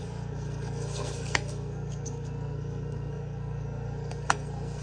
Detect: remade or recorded remade